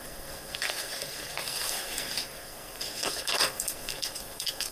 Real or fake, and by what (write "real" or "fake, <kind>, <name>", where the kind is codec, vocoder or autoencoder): fake, codec, SNAC